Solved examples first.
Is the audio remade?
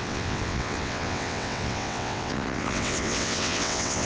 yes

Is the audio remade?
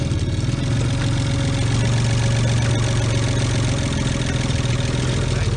no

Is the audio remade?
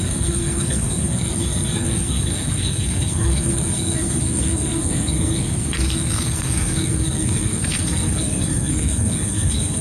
yes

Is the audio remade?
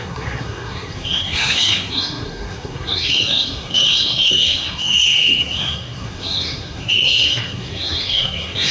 yes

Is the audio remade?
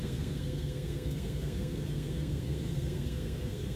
yes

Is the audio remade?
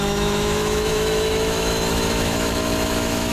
yes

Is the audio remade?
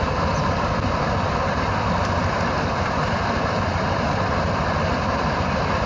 no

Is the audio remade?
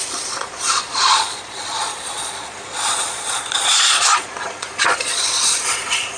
yes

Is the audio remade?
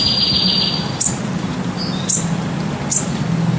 no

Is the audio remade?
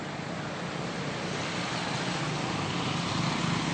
no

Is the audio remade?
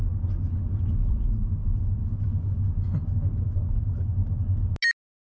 no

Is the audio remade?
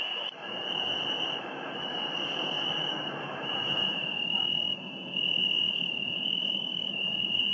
yes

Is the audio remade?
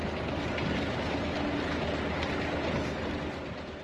no